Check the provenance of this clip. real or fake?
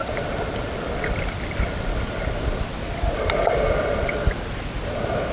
fake